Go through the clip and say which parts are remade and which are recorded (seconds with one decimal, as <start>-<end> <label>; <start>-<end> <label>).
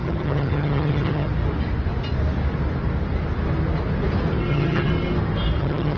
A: 0.0-1.3 remade; 1.3-4.5 recorded; 4.5-4.9 remade; 4.9-5.6 recorded; 5.6-6.0 remade